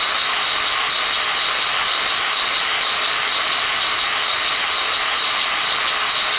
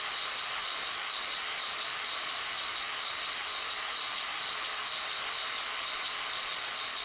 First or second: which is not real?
second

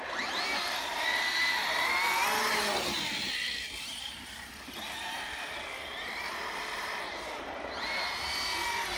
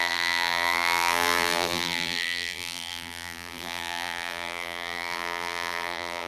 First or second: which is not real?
second